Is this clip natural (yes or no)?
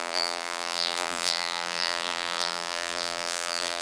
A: no